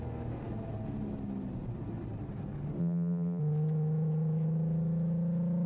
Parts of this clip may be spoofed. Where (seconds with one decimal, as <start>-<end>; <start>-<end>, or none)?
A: 2.8-3.4